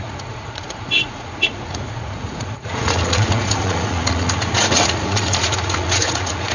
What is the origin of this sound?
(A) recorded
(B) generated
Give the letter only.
B